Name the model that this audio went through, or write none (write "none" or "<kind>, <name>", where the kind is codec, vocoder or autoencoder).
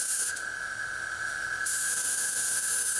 autoencoder, DAC-VAE